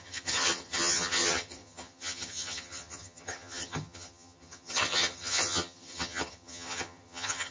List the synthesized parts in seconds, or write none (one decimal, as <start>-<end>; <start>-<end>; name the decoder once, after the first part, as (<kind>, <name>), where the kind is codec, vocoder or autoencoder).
0.0-7.5 (vocoder, HiFi-GAN)